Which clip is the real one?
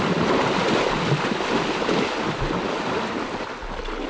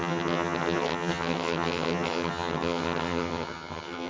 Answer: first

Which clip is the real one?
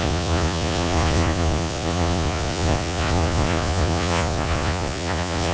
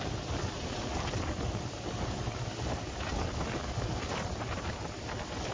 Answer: second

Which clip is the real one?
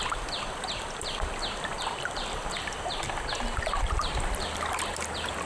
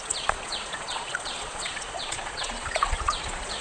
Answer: first